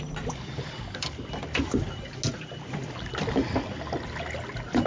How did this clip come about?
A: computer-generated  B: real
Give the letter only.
B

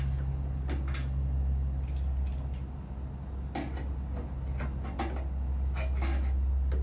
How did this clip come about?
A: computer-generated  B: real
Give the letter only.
B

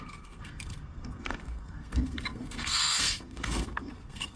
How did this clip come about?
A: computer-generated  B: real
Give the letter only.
A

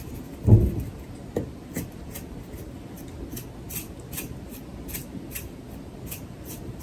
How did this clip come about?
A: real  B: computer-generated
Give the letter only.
A